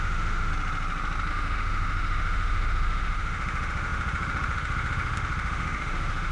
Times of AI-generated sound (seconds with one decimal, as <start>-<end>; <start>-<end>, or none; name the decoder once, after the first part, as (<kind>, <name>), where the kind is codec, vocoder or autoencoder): 0.0-0.5 (autoencoder, DAC-VAE); 1.3-6.3